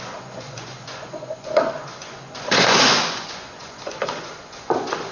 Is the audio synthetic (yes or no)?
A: yes